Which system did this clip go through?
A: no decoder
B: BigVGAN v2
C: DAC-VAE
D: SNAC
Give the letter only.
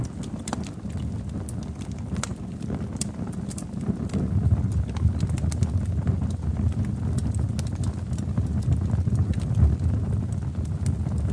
A